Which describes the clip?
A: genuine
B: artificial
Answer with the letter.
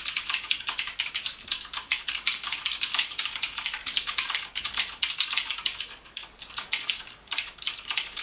B